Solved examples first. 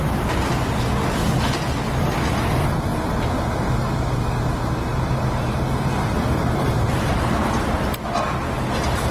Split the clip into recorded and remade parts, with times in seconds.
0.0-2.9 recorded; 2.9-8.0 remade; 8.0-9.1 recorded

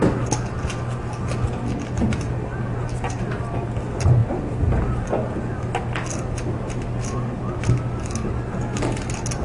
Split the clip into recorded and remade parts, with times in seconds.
0.0-9.4 recorded